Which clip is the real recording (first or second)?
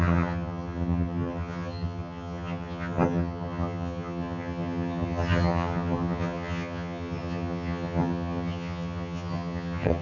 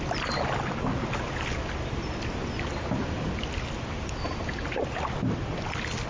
second